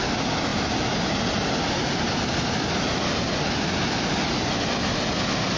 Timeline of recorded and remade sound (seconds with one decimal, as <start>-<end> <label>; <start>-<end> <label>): 0.0-5.6 recorded